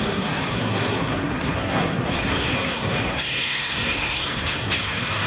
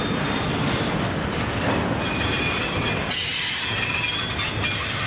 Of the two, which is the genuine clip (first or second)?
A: second